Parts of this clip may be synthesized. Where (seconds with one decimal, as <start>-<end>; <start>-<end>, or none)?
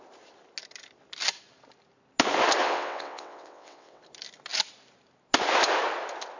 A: 2.6-4.0